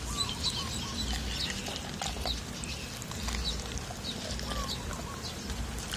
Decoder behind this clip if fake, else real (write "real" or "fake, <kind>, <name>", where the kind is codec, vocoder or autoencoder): real